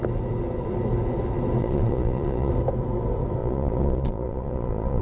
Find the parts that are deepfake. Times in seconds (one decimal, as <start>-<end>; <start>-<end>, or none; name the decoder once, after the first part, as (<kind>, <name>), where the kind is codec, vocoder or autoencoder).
1.6-2.5 (vocoder, Vocos); 3.4-5.0